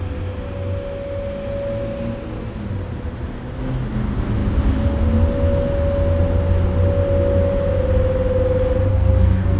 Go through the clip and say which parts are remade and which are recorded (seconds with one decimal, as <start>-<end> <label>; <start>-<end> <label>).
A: 0.0-8.9 recorded; 8.9-9.6 remade